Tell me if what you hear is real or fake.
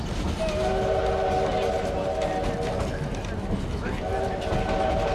real